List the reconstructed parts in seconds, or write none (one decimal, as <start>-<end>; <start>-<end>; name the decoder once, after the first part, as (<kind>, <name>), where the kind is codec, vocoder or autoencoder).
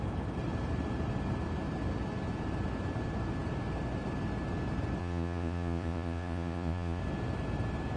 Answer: 5.0-7.0 (vocoder, Vocos)